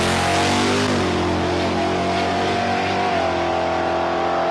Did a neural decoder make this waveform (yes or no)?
no